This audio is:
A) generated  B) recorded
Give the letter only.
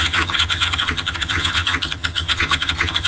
A